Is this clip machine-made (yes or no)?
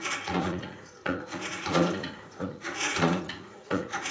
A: yes